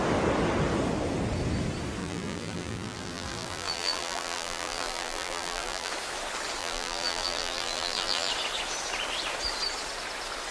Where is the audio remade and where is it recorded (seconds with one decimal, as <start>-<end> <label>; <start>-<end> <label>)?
0.0-2.0 recorded; 2.0-5.9 remade; 5.9-6.6 recorded; 6.6-8.3 remade; 8.3-10.5 recorded